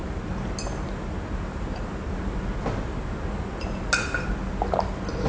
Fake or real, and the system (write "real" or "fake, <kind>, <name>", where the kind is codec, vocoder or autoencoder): real